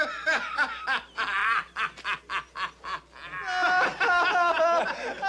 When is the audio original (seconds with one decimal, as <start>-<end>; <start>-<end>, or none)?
0.0-5.3